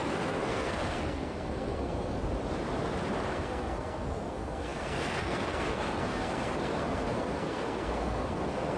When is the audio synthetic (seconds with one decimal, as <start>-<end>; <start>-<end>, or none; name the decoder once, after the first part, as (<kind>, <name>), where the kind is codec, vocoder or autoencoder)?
0.0-2.2 (codec, SNAC); 3.3-8.8